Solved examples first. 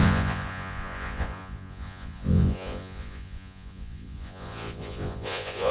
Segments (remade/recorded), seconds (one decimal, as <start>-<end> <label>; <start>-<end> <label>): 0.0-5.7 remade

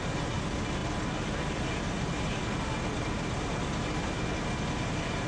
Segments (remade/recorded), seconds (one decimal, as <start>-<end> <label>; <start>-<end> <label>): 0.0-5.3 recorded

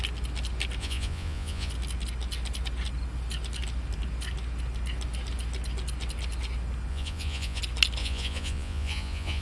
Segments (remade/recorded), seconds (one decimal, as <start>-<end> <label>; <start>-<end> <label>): 0.0-0.8 recorded; 0.8-1.7 remade; 1.7-6.9 recorded; 6.9-7.6 remade; 7.6-8.0 recorded; 8.0-9.4 remade

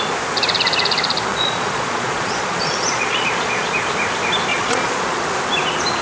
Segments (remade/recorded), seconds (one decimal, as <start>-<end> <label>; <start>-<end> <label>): 0.0-1.3 recorded; 1.3-3.7 remade; 3.7-4.5 recorded; 4.5-5.2 remade; 5.2-6.0 recorded